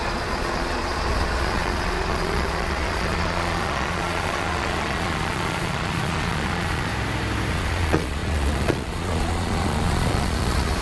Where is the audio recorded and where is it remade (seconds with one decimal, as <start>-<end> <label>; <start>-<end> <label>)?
0.0-6.9 remade; 6.9-7.5 recorded; 7.5-10.8 remade